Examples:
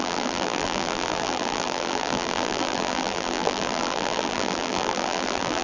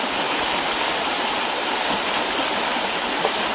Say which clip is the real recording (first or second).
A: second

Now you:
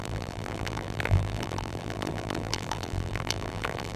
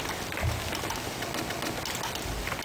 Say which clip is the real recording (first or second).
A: second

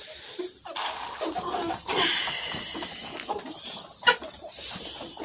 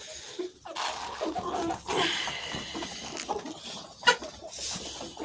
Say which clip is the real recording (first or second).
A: second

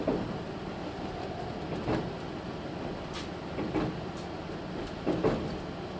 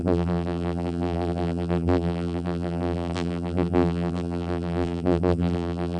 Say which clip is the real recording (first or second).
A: first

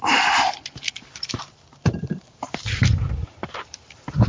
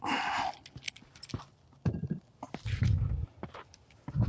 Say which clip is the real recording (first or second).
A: second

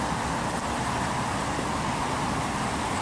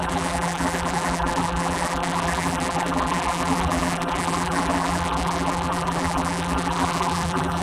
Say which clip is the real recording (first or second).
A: first